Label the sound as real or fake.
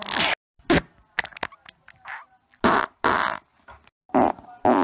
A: real